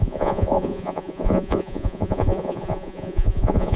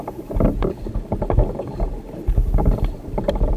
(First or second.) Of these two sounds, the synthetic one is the first